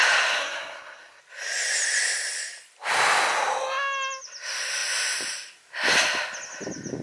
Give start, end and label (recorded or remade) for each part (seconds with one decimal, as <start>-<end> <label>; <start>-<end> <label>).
0.0-0.4 recorded; 0.4-1.2 remade; 1.2-7.0 recorded

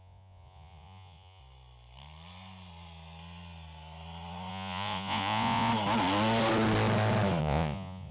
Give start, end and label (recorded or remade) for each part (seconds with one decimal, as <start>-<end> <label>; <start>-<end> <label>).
0.0-1.4 remade; 1.4-4.5 recorded; 4.5-5.7 remade; 5.7-7.4 recorded; 7.4-8.1 remade

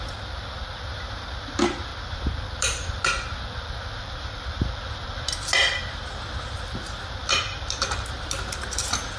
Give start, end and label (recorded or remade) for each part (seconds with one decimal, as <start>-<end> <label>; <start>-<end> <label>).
0.0-9.2 recorded